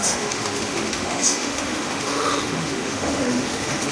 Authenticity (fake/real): fake